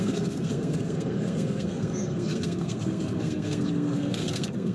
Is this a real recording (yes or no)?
no